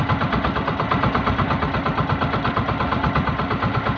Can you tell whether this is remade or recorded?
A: recorded